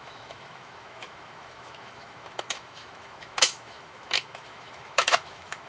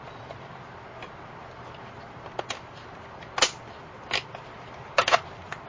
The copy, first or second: first